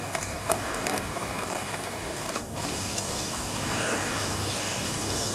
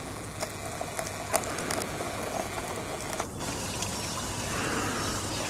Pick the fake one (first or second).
first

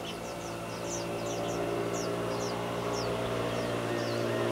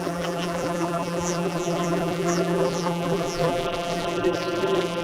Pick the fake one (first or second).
second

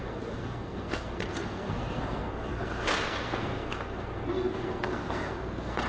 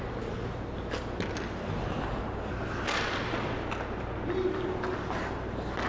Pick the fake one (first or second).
first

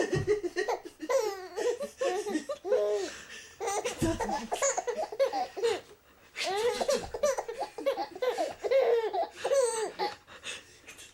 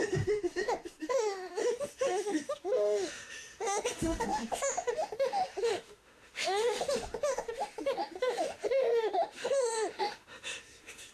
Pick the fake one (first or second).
second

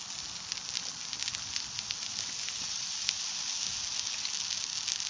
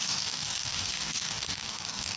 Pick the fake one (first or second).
second